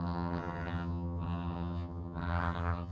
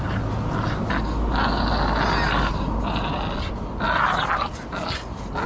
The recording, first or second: second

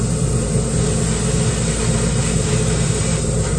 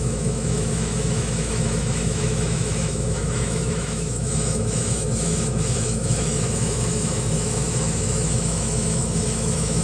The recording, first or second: first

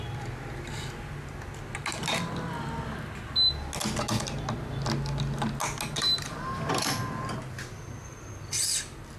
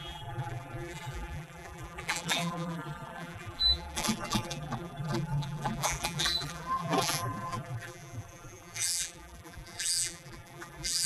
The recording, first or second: first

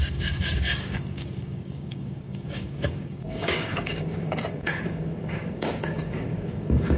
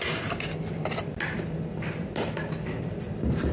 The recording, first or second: second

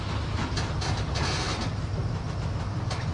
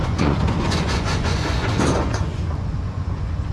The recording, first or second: first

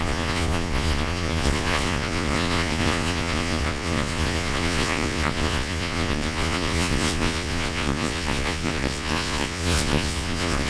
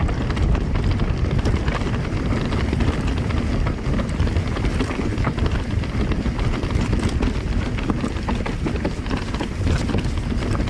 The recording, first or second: second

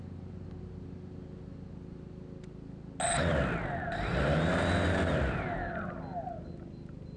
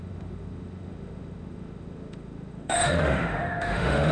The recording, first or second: first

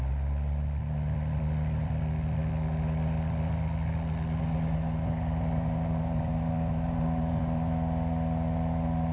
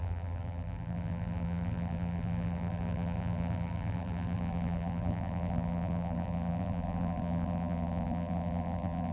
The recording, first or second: first